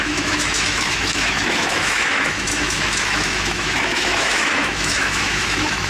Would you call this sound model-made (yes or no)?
yes